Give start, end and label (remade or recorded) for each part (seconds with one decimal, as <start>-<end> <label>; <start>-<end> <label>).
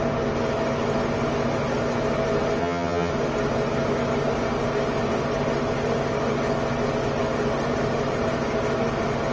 0.0-2.6 recorded; 2.6-3.1 remade; 3.1-9.3 recorded